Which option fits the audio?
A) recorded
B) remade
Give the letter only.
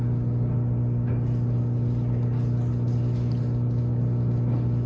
A